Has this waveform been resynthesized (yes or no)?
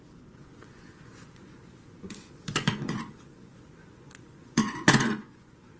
yes